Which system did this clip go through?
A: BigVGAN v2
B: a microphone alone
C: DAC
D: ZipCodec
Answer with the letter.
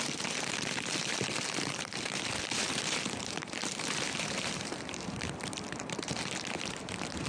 A